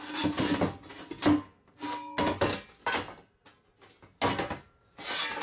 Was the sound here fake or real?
real